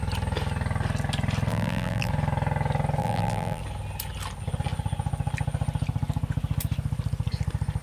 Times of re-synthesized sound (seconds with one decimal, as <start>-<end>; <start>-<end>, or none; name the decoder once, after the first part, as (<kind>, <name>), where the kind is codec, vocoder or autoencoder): 1.5-2.1 (vocoder, BigVGAN v2); 3.0-3.6